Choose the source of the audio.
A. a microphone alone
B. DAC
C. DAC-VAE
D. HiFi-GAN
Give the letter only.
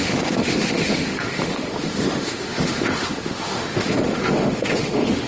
C